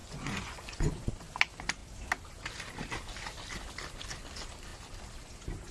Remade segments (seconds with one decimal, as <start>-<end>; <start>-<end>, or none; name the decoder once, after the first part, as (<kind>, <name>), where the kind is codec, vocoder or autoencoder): 0.0-0.9 (vocoder, Vocos)